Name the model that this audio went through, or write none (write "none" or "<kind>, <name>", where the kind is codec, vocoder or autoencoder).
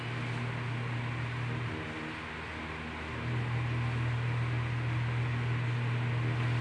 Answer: none